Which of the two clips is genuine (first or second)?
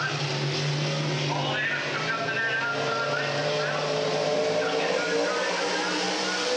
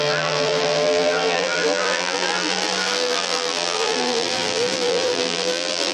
first